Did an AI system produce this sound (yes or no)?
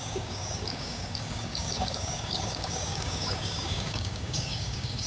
yes